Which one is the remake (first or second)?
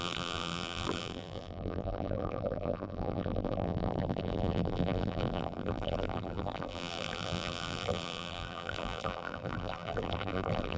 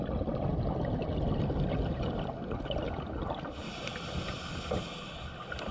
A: first